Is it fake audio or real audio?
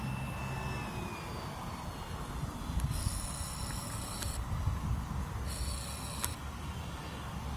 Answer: real